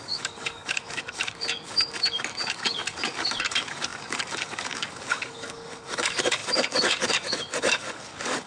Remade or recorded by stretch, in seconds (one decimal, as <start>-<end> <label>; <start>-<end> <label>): 0.0-8.5 remade